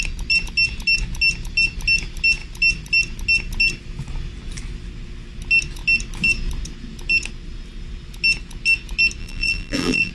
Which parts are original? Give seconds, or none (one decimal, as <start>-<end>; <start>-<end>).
0.0-9.2